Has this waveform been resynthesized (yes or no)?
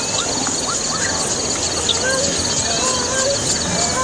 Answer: no